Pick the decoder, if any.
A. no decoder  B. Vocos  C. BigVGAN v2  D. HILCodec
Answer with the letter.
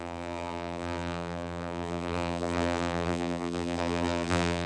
C